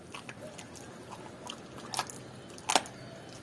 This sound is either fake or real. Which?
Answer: real